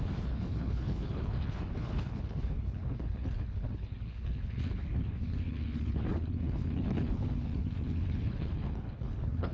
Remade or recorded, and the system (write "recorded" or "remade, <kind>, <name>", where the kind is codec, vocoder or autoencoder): remade, codec, HILCodec